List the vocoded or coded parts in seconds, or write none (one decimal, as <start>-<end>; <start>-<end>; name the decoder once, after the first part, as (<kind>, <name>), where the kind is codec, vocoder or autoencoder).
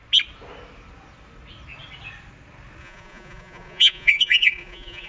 2.8-5.1 (vocoder, Vocos)